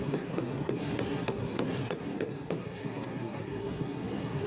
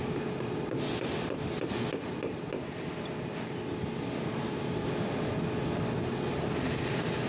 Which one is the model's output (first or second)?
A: first